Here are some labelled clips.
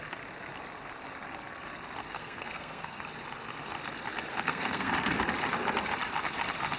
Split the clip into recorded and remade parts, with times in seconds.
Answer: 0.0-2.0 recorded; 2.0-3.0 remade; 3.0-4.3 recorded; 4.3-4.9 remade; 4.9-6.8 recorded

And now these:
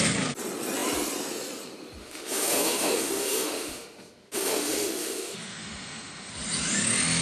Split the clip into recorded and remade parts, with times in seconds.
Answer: 0.0-2.0 recorded; 2.0-6.3 remade; 6.3-7.2 recorded

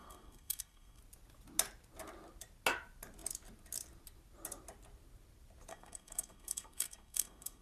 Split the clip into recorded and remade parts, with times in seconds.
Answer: 0.0-1.0 remade; 1.0-5.7 recorded; 5.7-7.6 remade